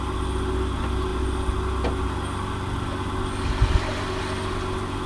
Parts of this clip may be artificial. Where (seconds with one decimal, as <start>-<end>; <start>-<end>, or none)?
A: none